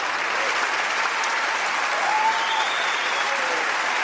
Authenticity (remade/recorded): recorded